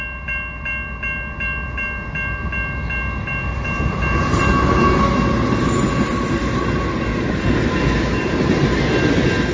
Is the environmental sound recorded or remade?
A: recorded